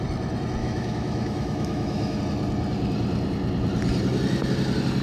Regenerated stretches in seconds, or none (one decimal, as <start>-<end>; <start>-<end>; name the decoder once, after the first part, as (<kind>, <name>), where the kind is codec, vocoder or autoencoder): 0.6-2.2 (autoencoder, DAC-VAE)